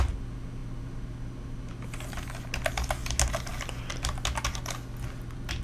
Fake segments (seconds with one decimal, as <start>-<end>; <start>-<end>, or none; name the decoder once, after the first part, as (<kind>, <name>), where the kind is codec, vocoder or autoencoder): none